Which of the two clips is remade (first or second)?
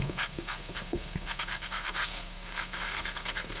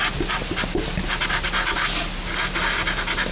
first